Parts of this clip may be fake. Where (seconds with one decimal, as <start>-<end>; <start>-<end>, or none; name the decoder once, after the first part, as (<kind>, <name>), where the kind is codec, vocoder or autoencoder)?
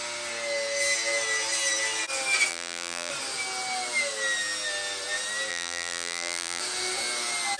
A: 2.5-3.1 (vocoder, BigVGAN v2); 5.5-6.6